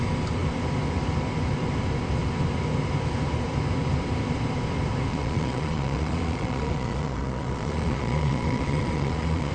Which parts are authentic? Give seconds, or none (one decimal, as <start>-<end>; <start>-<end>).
0.0-5.1